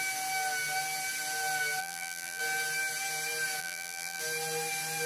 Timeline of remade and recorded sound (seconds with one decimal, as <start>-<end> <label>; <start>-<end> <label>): 0.0-1.8 recorded; 1.8-2.4 remade; 2.4-3.6 recorded; 3.6-4.2 remade; 4.2-5.1 recorded